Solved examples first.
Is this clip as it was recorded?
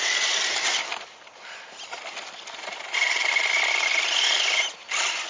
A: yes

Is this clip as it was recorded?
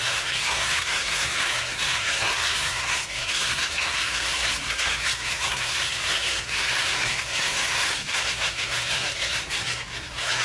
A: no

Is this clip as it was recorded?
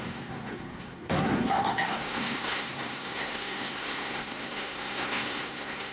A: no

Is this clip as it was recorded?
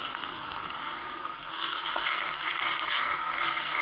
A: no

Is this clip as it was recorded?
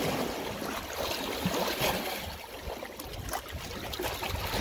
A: yes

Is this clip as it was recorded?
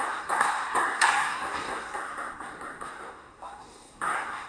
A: no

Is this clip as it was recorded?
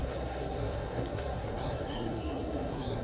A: no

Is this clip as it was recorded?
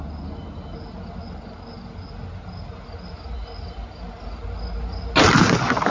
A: yes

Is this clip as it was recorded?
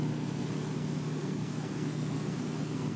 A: no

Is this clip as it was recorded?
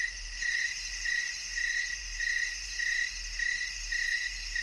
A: yes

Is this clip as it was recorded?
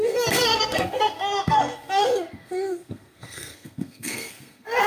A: no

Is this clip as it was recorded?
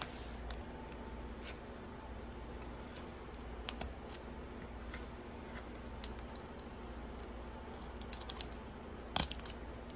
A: yes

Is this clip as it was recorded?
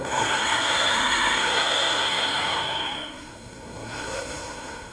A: no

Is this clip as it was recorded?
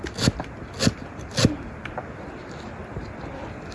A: yes